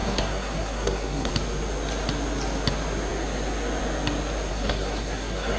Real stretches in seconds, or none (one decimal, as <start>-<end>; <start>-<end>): 1.3-4.5